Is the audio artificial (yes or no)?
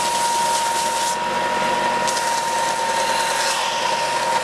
no